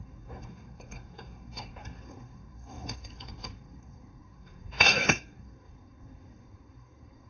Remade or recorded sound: remade